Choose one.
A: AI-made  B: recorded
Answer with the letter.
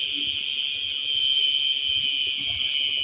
B